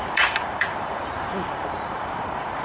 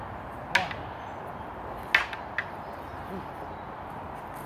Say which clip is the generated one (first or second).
first